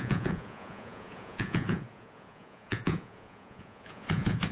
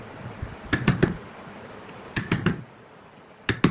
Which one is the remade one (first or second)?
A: first